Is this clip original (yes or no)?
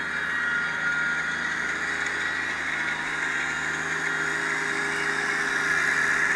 yes